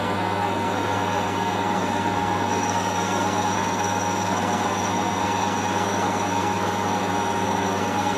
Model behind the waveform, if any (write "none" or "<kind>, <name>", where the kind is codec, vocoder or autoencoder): codec, SNAC